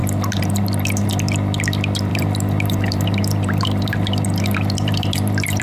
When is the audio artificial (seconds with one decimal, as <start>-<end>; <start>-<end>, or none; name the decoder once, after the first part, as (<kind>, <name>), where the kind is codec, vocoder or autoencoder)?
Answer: 0.0-1.1 (vocoder, BigVGAN v2); 2.1-5.6